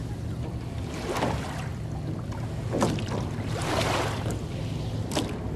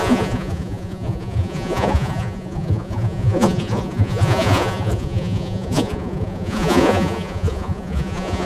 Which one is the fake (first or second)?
second